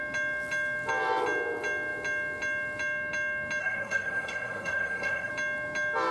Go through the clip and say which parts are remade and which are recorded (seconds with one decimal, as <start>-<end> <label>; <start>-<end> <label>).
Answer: 0.0-3.6 recorded; 3.6-5.3 remade; 5.3-6.1 recorded